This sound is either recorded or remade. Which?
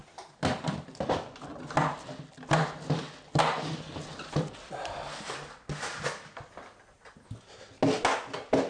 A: recorded